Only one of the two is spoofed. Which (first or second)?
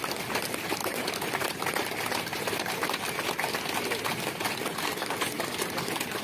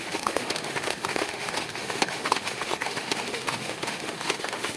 second